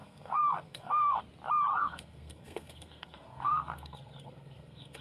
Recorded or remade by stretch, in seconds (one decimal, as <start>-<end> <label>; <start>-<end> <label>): 0.0-1.2 remade; 1.2-1.7 recorded; 1.7-5.0 remade